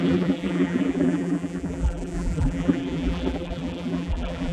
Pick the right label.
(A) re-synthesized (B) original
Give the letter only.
A